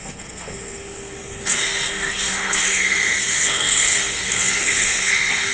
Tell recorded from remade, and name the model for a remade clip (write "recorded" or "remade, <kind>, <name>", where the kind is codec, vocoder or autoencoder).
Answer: remade, codec, SNAC